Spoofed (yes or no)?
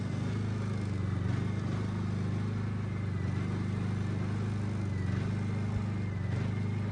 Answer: no